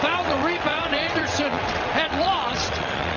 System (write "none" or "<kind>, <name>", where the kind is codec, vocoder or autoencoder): vocoder, WaveNeXt